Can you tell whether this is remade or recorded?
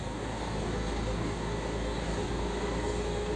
remade